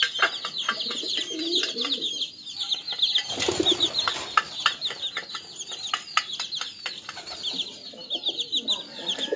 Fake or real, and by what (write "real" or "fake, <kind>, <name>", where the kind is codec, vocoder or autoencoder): real